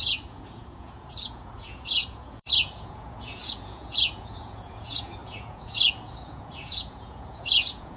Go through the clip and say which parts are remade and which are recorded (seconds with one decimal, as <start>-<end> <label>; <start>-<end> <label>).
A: 0.0-8.0 remade